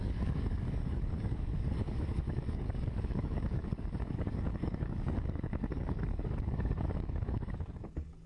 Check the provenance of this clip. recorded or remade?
remade